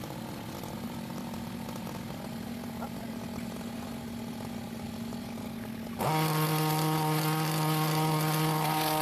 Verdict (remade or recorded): recorded